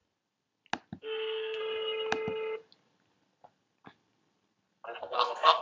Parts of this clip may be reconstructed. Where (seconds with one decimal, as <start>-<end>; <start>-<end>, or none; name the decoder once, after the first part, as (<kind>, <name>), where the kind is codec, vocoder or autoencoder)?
1.0-1.6 (codec, SNAC); 5.0-5.6